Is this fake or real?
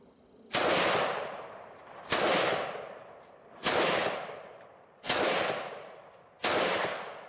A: real